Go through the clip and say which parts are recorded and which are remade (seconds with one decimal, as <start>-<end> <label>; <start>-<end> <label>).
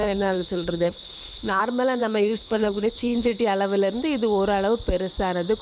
0.0-1.6 remade; 1.6-2.0 recorded; 2.0-3.4 remade; 3.4-5.6 recorded